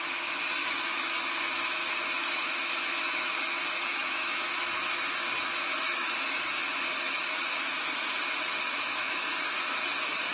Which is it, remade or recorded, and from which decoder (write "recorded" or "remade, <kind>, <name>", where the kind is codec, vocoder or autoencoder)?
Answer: remade, autoencoder, DAC-VAE